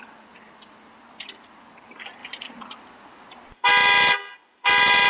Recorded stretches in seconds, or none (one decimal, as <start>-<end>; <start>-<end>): 0.0-5.1